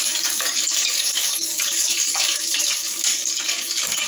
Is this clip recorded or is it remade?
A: remade